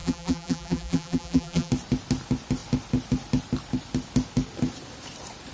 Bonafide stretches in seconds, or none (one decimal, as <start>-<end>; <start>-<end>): 1.7-5.5